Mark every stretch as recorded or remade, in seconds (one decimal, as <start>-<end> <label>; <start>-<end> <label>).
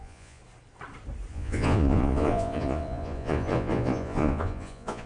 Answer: 0.0-0.4 remade; 0.4-1.3 recorded; 1.3-5.1 remade